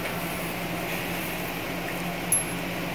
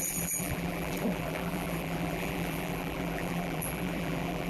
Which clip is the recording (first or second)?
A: first